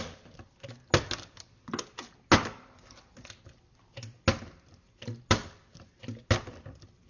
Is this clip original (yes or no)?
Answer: yes